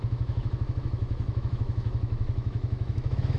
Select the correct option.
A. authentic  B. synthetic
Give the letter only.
B